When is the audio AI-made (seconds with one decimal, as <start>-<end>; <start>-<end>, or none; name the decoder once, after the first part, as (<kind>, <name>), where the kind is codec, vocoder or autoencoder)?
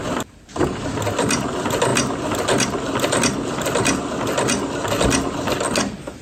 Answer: none